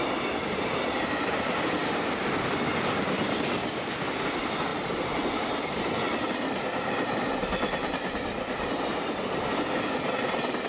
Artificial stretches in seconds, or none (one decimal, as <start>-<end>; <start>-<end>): none